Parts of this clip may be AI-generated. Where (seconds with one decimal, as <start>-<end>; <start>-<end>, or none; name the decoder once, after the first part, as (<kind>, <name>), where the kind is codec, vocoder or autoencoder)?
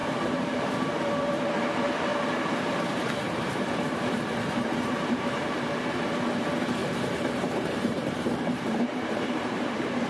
0.0-2.1 (vocoder, BigVGAN v2); 2.7-10.1